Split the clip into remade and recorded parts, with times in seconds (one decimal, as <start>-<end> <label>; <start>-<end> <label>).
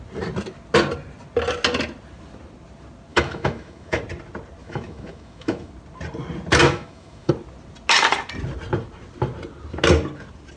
0.0-3.1 recorded; 3.1-4.0 remade; 4.0-4.6 recorded; 4.6-5.7 remade; 5.7-6.6 recorded; 6.6-7.3 remade; 7.3-10.6 recorded